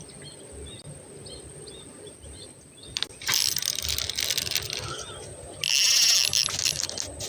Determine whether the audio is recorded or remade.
recorded